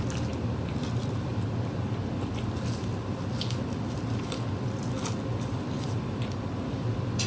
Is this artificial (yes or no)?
no